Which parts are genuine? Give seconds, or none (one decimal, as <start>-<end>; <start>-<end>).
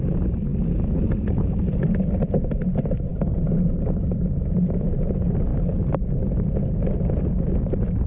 0.0-8.1